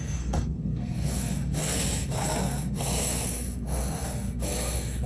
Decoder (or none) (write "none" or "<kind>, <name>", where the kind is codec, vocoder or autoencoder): codec, SNAC